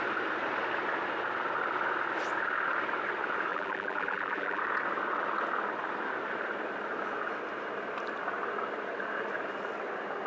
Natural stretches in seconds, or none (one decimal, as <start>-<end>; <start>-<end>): 0.0-3.5; 4.6-10.3